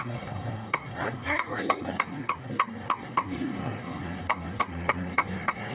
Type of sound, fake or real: fake